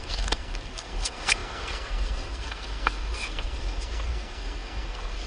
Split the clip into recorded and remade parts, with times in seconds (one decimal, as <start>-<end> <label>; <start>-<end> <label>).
0.0-5.3 remade